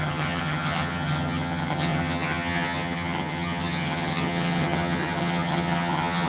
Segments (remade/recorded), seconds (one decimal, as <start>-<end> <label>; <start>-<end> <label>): 0.0-6.3 remade